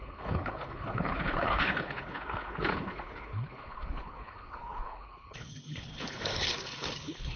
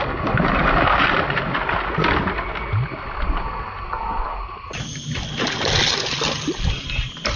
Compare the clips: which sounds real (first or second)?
second